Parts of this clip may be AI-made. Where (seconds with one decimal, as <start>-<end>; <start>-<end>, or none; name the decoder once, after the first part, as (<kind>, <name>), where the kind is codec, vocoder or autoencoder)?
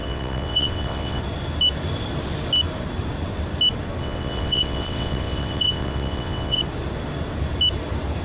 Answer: 0.0-1.2 (vocoder, WaveNeXt); 4.0-6.6